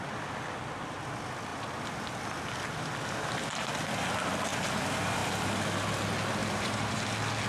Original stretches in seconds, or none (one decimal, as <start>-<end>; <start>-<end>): 0.0-6.4; 7.0-7.5

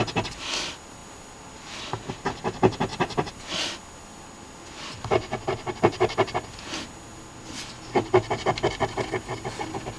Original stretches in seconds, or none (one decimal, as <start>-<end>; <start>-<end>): 0.0-2.9; 3.4-10.0

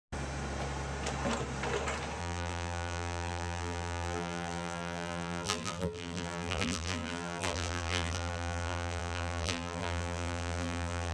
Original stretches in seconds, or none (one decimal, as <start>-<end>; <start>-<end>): 0.0-2.2

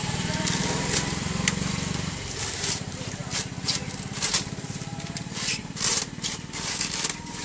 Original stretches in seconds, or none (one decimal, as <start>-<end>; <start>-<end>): 3.2-4.3; 5.6-7.4

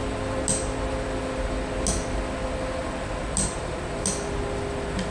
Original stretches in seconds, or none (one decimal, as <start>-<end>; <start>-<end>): 0.0-5.1

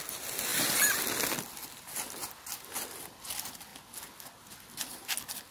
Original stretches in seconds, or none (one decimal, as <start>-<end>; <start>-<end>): 0.0-5.5

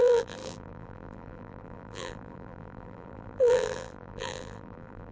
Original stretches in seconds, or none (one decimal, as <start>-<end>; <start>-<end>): none